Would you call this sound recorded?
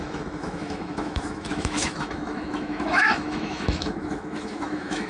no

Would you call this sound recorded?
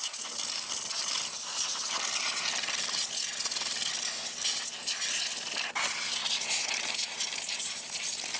yes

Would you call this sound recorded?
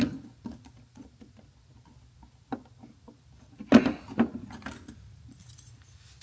yes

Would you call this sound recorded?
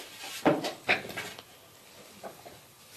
yes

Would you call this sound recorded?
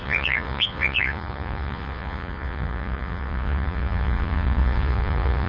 no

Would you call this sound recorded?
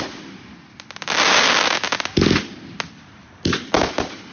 yes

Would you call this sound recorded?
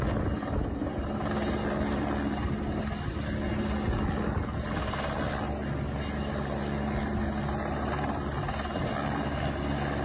yes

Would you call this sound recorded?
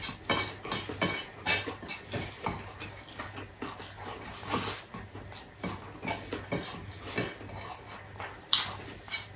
yes